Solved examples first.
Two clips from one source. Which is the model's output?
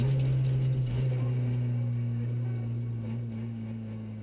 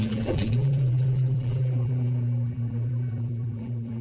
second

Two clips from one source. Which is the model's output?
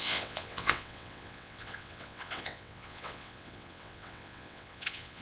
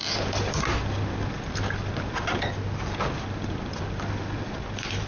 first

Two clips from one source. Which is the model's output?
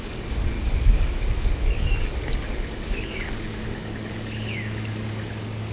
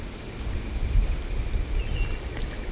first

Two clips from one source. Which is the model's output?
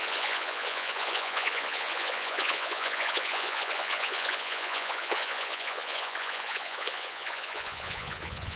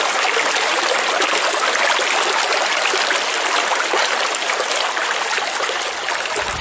first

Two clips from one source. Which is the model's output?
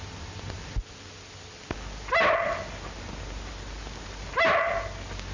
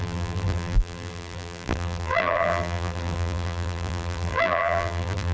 second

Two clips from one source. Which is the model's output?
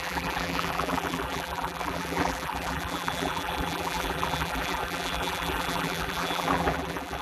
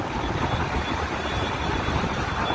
first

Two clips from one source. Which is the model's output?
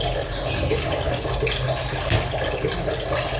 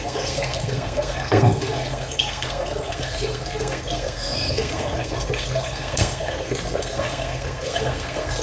second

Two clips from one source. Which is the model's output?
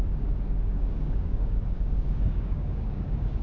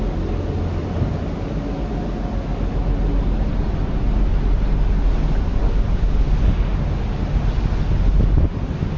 first